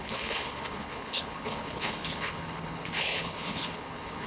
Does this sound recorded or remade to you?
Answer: remade